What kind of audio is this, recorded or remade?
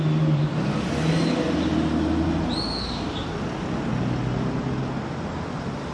recorded